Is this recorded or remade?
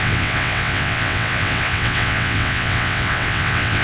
remade